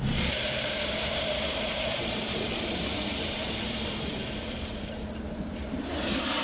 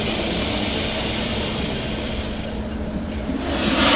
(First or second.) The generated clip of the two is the first